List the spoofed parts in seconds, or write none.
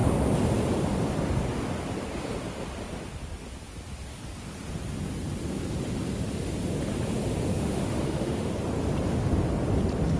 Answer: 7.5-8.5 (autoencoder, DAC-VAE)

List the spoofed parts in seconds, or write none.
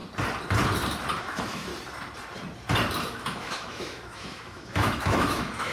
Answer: 1.2-1.7 (autoencoder, DAC-VAE); 3.0-5.7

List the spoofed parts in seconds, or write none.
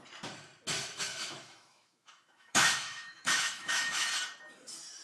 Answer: 1.1-4.1 (autoencoder, DAC-VAE)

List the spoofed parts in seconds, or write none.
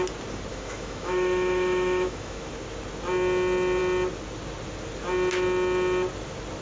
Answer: 0.5-2.5 (autoencoder, DAC-VAE)